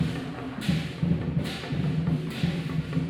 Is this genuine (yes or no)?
no